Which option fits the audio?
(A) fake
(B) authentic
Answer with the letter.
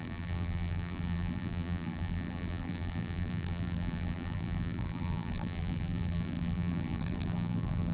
A